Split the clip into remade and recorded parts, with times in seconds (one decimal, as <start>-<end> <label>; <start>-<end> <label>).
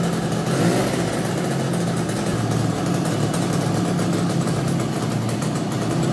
0.0-6.1 recorded